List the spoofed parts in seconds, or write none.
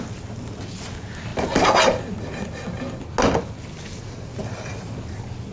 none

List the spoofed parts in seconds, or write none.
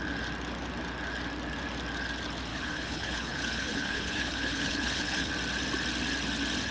2.5-5.3 (codec, HILCodec)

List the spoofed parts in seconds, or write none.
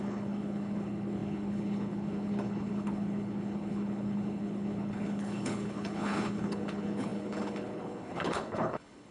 0.0-9.1 (codec, HILCodec)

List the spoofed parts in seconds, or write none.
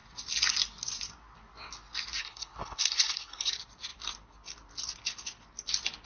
2.2-3.5 (codec, HILCodec)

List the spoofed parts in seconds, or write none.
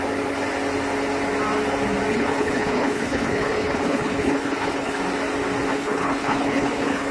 2.1-5.0 (codec, HILCodec); 5.7-7.1